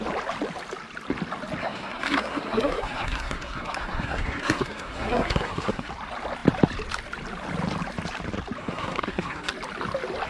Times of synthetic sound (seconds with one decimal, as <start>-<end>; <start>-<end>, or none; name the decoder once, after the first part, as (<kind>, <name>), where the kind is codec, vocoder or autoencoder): 1.6-5.9 (codec, SNAC); 8.6-9.5